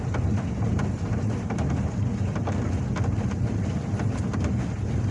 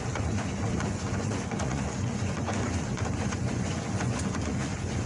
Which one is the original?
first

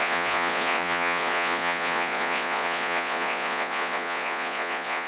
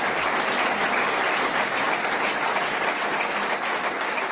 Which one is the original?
second